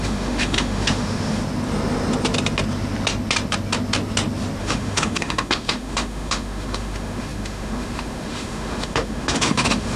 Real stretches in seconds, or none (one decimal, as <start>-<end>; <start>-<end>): 1.4-4.6